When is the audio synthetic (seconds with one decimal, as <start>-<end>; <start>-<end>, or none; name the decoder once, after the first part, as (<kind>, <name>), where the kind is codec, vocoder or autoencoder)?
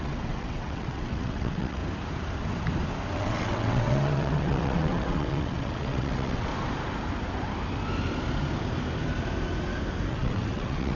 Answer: 0.0-1.8 (vocoder, WaveNeXt); 3.1-6.5; 10.1-11.0